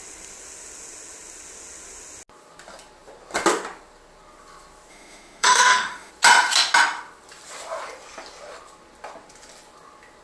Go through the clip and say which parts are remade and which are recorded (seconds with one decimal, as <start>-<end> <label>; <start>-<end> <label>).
0.0-4.9 recorded; 4.9-6.1 remade; 6.1-10.2 recorded